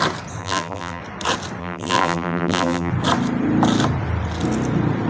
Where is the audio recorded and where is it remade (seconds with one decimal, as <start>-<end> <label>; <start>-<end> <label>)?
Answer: 0.0-0.4 recorded; 0.4-1.0 remade; 1.0-1.6 recorded; 1.6-2.9 remade; 2.9-5.1 recorded